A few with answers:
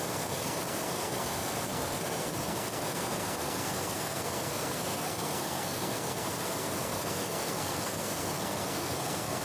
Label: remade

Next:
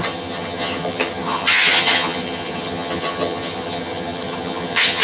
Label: remade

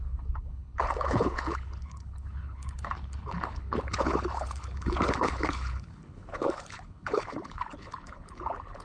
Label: remade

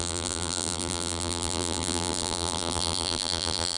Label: remade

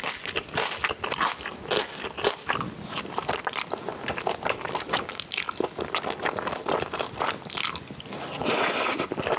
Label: recorded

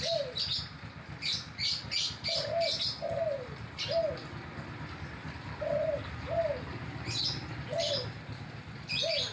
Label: recorded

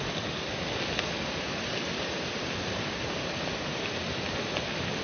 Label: recorded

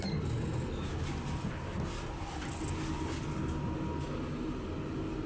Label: recorded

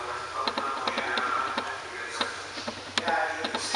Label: recorded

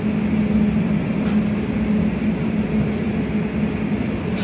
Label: recorded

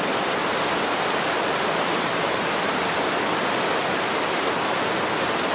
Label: recorded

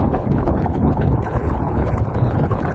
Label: remade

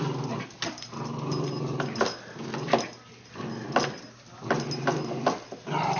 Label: recorded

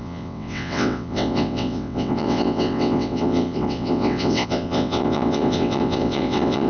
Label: remade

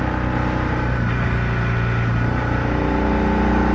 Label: recorded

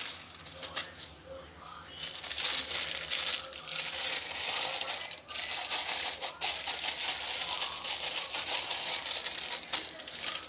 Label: recorded